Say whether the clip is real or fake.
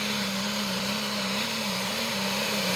fake